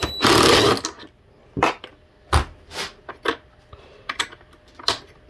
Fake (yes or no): no